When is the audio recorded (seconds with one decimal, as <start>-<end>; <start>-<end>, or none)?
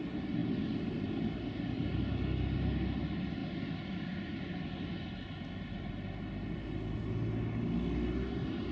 0.0-8.7